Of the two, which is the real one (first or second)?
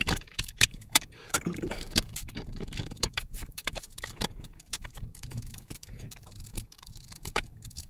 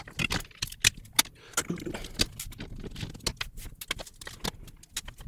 second